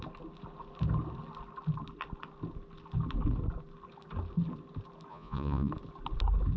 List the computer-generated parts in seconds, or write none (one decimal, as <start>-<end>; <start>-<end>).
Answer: 5.1-5.7